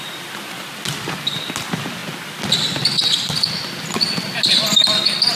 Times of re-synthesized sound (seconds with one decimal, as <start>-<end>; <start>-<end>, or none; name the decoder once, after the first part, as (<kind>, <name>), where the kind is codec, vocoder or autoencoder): none